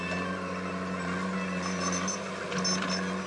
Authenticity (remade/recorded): recorded